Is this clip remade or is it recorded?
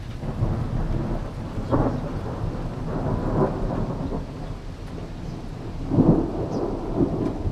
recorded